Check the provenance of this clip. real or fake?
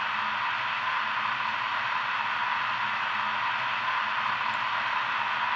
real